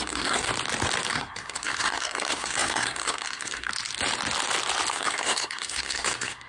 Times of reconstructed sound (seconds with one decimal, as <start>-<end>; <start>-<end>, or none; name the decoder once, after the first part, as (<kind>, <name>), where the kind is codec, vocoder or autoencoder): 0.0-0.5 (codec, SNAC); 1.1-3.7; 4.9-6.5